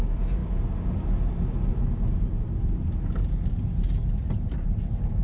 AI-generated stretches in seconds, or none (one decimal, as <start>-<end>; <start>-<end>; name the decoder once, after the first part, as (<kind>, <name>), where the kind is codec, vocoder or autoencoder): none